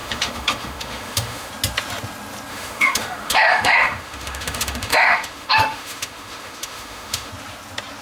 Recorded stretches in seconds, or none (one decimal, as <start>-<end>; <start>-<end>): 1.5-2.5; 7.3-8.0